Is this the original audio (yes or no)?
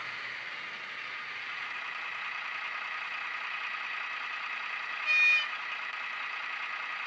yes